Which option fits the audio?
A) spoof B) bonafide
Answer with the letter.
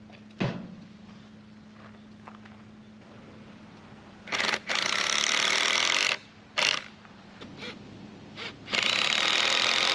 B